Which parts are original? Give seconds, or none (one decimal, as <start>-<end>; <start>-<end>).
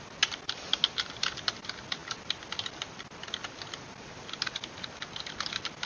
0.0-5.9